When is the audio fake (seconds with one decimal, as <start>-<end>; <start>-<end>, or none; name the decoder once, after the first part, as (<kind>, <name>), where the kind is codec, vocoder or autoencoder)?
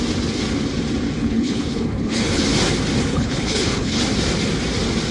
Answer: 1.2-2.4 (codec, HILCodec); 3.1-4.0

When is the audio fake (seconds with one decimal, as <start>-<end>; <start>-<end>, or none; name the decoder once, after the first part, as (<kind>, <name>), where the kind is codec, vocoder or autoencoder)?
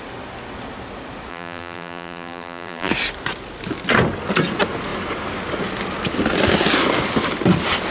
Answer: 1.3-2.9 (vocoder, BigVGAN v2)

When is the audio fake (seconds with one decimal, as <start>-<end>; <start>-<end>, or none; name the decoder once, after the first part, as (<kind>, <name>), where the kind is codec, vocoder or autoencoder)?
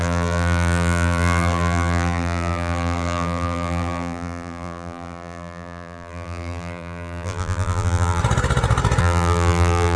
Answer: 0.0-8.2 (vocoder, BigVGAN v2); 9.0-10.0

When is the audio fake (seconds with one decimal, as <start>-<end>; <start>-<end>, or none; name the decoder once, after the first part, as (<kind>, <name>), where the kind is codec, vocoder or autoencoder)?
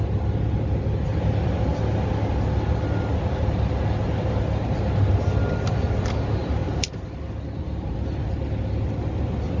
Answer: none